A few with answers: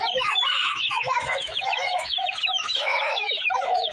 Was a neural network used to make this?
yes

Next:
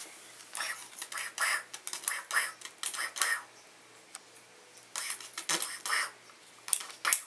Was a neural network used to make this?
no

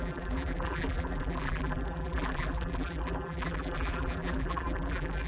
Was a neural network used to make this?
yes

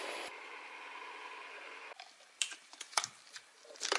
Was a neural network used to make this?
no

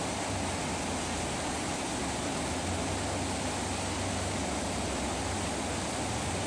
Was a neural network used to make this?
no